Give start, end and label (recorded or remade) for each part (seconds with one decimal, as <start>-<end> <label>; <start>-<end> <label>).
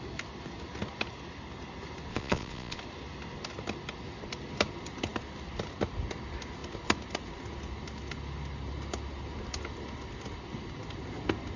0.0-2.1 recorded; 2.1-2.8 remade; 2.8-11.6 recorded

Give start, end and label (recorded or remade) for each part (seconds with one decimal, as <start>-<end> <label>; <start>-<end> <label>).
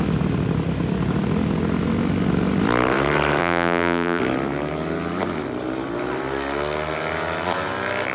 0.0-3.4 recorded; 3.4-4.2 remade; 4.2-8.1 recorded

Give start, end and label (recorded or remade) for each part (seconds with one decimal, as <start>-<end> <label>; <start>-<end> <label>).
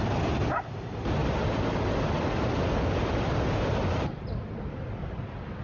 0.0-5.6 recorded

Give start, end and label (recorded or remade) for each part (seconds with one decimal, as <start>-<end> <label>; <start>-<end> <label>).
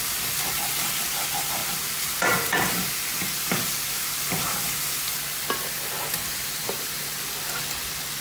0.0-1.6 recorded; 1.6-2.9 remade; 2.9-6.2 recorded; 6.2-7.2 remade; 7.2-8.2 recorded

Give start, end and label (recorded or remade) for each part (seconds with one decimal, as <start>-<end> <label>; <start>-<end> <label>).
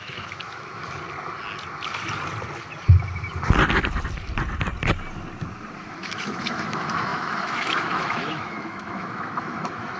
0.0-0.8 remade; 0.8-5.8 recorded; 5.8-10.0 remade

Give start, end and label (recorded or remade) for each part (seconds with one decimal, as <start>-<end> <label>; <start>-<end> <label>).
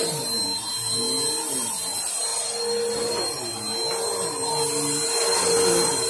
0.0-6.1 recorded